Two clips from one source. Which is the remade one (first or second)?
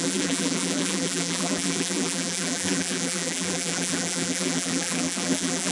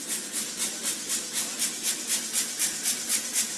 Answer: first